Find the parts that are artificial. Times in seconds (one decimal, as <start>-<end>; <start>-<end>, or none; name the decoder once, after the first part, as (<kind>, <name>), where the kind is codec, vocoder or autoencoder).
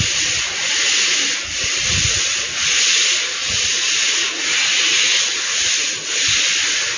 3.4-5.6 (vocoder, Vocos)